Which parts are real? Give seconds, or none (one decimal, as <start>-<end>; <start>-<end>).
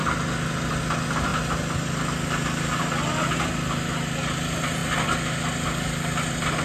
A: 0.0-6.6